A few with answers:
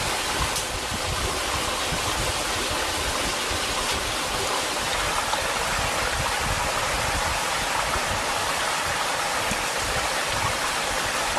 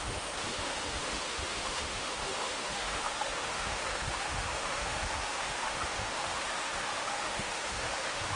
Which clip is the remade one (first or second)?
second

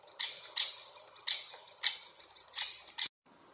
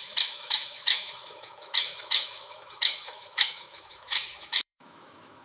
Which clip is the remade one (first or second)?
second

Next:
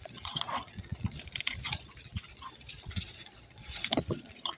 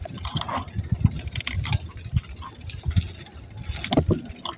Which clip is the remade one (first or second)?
first